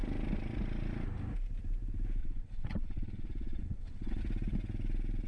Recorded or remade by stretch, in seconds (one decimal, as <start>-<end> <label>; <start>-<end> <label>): 0.0-2.2 recorded; 2.2-4.2 remade; 4.2-5.3 recorded